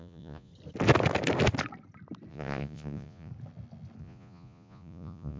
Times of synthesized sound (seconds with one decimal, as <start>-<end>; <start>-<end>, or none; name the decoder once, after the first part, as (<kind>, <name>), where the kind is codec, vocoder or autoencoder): 0.0-0.5 (vocoder, Vocos); 2.3-3.3; 4.0-5.4